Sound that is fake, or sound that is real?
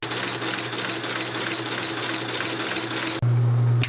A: real